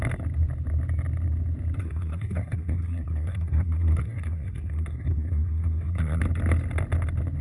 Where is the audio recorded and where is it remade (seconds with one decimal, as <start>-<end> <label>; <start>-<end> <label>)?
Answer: 0.0-1.8 recorded; 1.8-6.2 remade; 6.2-7.4 recorded